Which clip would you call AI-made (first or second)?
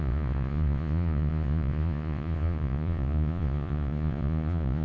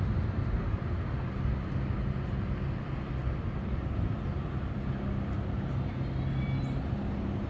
first